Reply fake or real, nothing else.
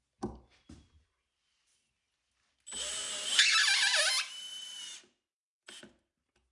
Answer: real